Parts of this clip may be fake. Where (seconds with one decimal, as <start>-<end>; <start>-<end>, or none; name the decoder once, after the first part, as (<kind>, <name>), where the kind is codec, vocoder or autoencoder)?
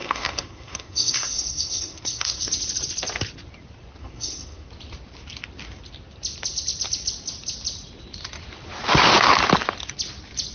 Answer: 0.0-2.5 (codec, SNAC); 4.0-4.7